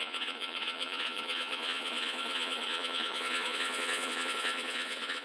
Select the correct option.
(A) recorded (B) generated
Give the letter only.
B